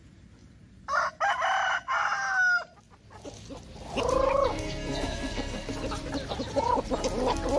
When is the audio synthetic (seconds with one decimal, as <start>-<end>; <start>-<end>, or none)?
4.5-5.7